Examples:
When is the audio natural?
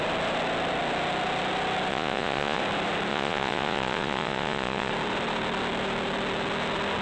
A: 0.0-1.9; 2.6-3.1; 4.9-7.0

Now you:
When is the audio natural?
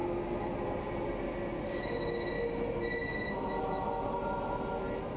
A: 0.0-5.2